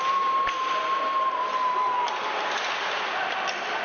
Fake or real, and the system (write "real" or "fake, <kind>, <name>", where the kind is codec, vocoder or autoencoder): real